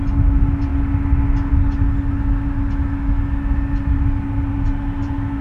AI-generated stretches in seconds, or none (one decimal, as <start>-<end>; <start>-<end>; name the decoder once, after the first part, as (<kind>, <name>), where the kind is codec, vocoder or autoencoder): none

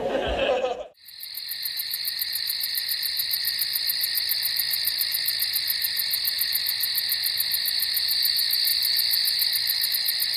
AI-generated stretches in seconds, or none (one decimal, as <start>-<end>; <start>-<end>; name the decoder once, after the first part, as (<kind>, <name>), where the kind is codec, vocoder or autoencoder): 1.2-5.1 (vocoder, BigVGAN v2); 8.7-9.9

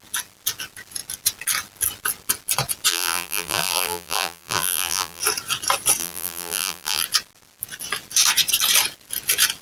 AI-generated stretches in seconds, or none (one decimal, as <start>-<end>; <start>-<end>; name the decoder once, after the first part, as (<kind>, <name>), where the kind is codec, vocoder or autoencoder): 2.9-5.2 (vocoder, BigVGAN v2); 6.0-7.0